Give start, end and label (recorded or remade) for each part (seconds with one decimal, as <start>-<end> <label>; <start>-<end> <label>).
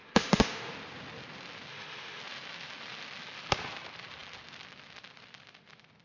0.0-0.7 remade; 0.7-1.7 recorded; 1.7-2.2 remade; 2.2-6.0 recorded